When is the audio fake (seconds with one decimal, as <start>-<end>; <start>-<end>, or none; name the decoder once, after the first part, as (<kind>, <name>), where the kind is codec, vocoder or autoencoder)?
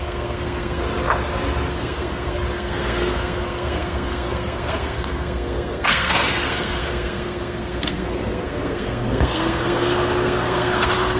0.0-0.8 (codec, SNAC); 1.7-11.2